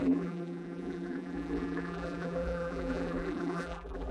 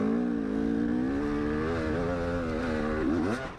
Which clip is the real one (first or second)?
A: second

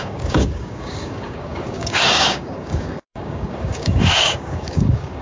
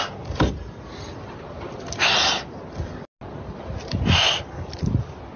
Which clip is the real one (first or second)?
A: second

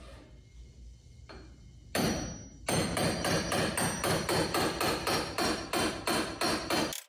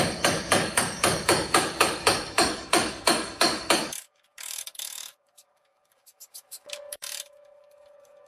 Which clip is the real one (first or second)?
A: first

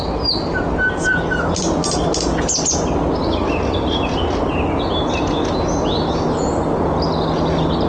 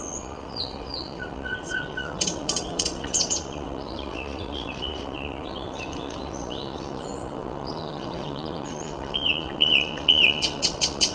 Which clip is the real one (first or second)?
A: first